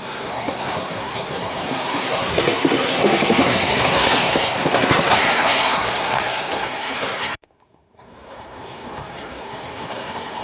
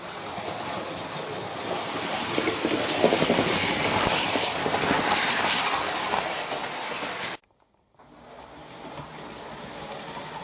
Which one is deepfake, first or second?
first